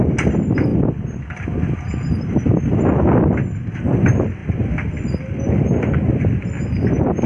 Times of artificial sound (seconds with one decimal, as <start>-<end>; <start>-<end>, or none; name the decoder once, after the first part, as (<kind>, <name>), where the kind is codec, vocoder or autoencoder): none